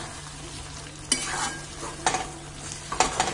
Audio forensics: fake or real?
real